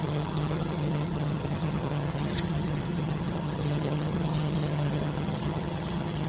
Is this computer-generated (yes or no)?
yes